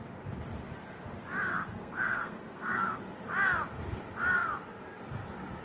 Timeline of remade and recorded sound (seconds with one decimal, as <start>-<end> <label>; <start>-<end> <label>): 0.0-1.5 recorded; 1.5-3.0 remade; 3.0-5.6 recorded